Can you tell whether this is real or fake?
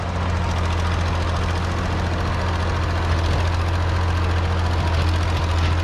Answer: real